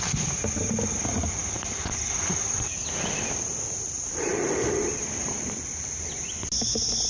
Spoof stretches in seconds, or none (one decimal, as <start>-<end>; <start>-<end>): none

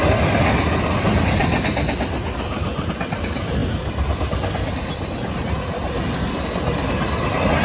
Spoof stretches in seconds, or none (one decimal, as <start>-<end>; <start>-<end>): none

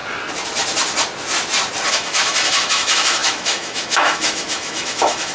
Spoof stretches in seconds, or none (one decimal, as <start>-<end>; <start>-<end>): 1.9-5.3

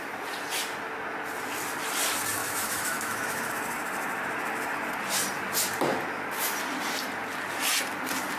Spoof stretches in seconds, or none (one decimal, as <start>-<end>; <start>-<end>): 2.4-3.5

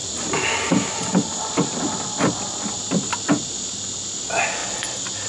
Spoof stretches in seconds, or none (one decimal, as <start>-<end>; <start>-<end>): none

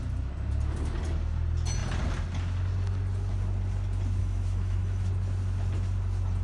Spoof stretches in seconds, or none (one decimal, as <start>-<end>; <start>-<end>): 4.2-5.1